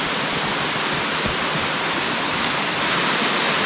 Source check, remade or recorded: recorded